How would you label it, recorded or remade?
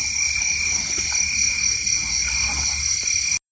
recorded